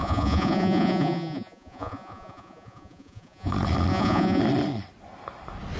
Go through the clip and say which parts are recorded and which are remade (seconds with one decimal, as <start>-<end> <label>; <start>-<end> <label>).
0.0-3.5 remade; 3.5-3.9 recorded; 3.9-4.4 remade; 4.4-5.8 recorded